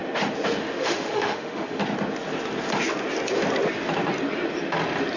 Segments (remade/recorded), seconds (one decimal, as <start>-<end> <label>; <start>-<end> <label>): 0.0-0.6 recorded; 0.6-1.8 remade; 1.8-5.2 recorded